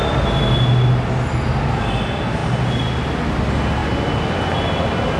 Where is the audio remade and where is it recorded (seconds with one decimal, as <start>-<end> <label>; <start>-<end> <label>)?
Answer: 0.0-5.2 recorded